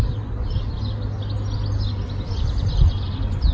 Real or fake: real